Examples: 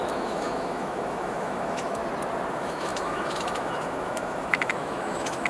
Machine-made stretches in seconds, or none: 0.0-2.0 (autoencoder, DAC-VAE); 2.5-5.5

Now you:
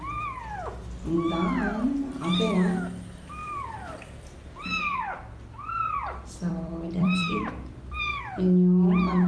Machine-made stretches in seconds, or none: 3.4-8.2 (vocoder, BigVGAN v2)